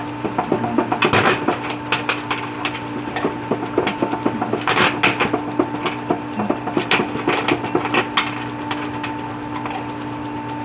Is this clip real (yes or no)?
yes